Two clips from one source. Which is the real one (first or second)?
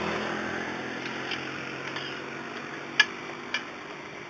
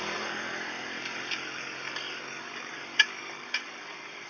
first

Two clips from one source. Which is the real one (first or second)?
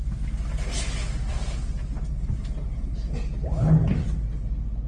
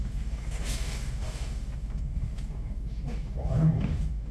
first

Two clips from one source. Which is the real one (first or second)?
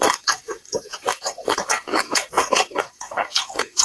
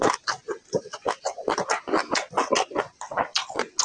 second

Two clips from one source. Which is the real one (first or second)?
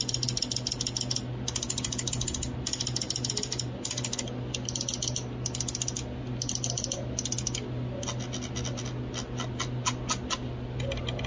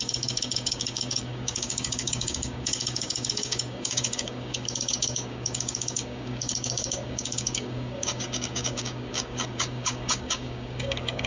first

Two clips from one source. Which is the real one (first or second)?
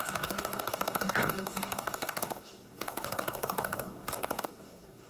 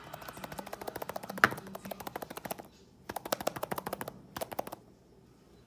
second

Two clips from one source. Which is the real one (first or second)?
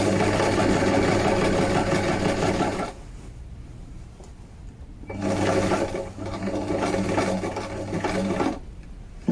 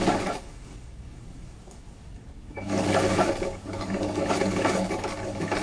first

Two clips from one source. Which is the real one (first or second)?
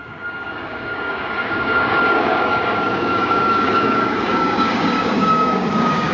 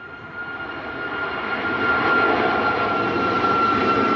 second